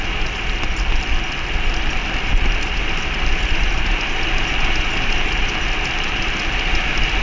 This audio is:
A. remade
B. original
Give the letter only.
B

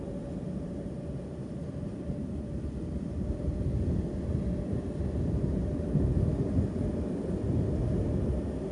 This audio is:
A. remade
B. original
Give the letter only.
B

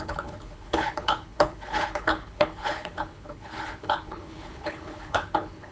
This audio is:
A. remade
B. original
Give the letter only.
A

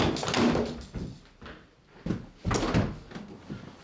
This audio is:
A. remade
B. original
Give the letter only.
B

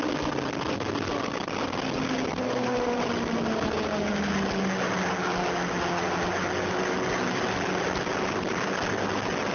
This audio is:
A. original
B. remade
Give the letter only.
A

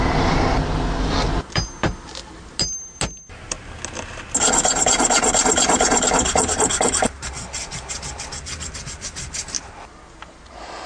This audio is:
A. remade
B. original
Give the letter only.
B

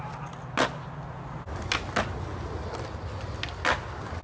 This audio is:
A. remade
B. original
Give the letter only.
B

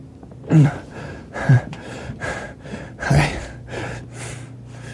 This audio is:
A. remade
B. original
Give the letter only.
B